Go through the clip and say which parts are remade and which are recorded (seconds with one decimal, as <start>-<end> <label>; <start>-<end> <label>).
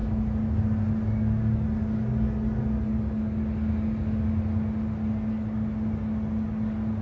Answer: 0.0-7.0 recorded